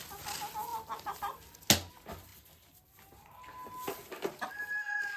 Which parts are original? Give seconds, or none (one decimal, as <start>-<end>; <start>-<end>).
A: 0.0-5.2